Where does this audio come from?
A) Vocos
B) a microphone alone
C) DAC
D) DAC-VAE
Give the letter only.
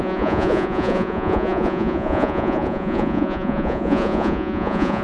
A